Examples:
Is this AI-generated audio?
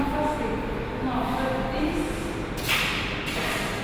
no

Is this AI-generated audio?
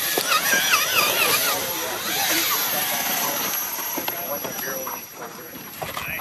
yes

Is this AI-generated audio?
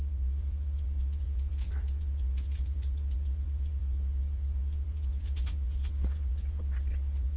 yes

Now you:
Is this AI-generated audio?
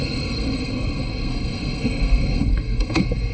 yes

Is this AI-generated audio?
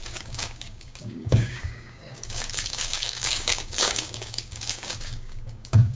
yes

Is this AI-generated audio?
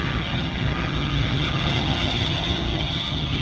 yes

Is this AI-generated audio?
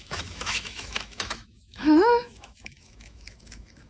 yes